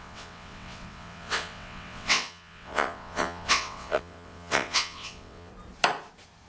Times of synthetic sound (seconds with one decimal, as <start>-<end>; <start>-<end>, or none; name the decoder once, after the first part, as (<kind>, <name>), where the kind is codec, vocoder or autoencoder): 0.0-5.5 (vocoder, WaveNeXt)